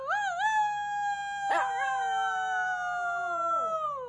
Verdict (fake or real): real